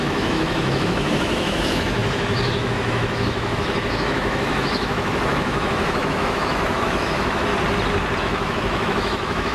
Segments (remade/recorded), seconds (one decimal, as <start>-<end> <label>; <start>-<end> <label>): 0.0-7.5 remade; 7.5-8.2 recorded; 8.2-9.5 remade